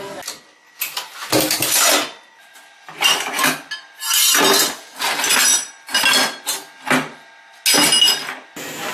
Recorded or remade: recorded